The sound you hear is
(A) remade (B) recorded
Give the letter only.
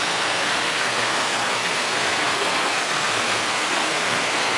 A